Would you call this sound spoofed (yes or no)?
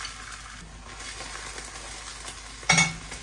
no